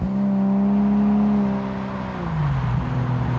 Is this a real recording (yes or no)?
yes